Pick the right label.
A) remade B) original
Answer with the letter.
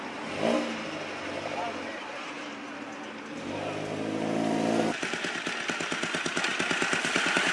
B